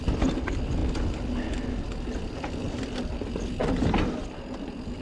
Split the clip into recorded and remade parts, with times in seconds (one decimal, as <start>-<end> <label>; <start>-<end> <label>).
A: 0.0-5.0 recorded